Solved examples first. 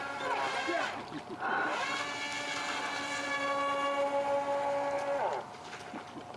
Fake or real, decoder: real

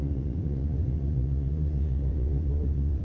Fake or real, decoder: fake, vocoder, Vocos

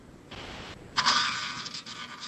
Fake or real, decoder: real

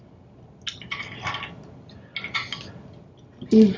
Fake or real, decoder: real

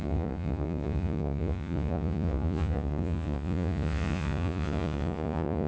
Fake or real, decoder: fake, vocoder, Vocos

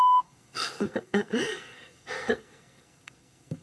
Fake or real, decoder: fake, codec, SNAC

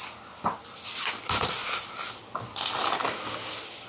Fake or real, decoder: real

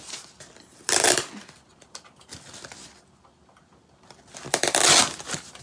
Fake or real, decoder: real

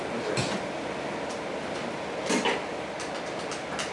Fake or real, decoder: fake, vocoder, BigVGAN v2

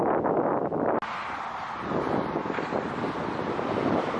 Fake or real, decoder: real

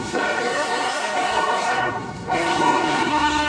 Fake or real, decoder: fake, codec, SNAC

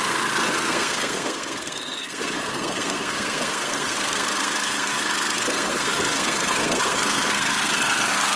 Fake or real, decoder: fake, codec, SNAC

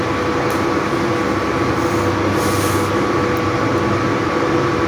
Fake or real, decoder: real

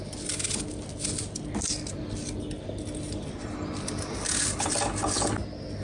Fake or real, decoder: real